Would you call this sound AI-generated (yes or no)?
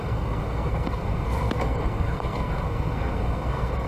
yes